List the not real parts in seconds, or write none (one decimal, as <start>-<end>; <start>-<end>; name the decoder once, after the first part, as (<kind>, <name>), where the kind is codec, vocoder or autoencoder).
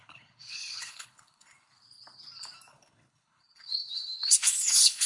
0.0-1.7 (codec, HILCodec); 2.7-5.1